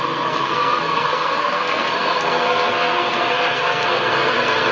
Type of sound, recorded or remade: remade